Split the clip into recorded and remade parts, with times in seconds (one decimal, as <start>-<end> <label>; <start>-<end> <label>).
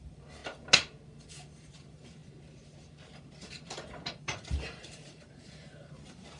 0.0-0.4 remade; 0.4-1.3 recorded; 1.3-2.2 remade; 2.2-4.1 recorded; 4.1-6.4 remade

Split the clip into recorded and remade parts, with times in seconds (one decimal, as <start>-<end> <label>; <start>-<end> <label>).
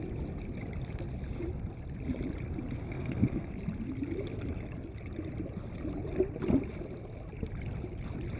0.0-2.8 recorded; 2.8-3.5 remade; 3.5-8.4 recorded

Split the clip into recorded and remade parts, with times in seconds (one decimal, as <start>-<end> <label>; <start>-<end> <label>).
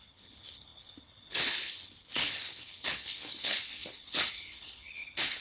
0.0-5.4 remade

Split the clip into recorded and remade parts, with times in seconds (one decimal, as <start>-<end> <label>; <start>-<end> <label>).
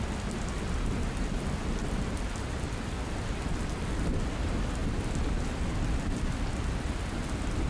0.0-7.7 recorded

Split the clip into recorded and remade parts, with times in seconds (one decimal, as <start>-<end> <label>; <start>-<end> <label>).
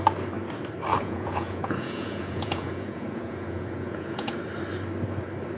0.0-0.9 recorded; 0.9-4.3 remade; 4.3-5.6 recorded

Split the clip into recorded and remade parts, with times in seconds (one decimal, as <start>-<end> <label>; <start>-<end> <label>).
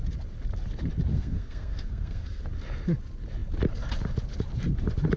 0.0-1.1 recorded; 1.1-2.4 remade; 2.4-5.2 recorded